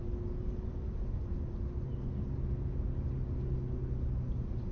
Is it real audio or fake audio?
real